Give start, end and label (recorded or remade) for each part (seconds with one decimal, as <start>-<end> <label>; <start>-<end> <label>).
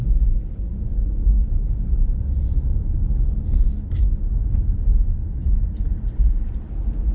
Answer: 0.0-5.4 recorded; 5.4-6.6 remade; 6.6-7.1 recorded